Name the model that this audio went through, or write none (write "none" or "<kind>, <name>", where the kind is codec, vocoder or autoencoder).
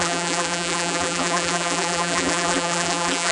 vocoder, BigVGAN v2